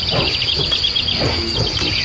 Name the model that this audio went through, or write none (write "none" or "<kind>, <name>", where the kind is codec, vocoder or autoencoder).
none